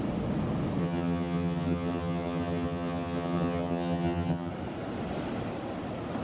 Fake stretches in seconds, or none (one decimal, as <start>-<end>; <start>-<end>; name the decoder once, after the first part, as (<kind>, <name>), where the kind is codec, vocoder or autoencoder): 0.8-4.5 (vocoder, HiFi-GAN)